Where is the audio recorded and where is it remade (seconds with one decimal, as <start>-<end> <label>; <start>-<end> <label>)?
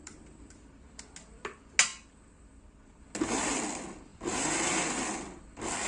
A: 0.0-1.0 remade; 1.0-1.9 recorded; 1.9-3.0 remade; 3.0-4.1 recorded; 4.1-5.2 remade; 5.2-5.9 recorded